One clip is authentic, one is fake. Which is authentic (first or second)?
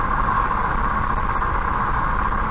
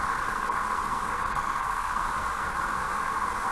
first